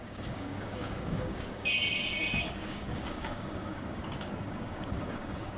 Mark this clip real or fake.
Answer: fake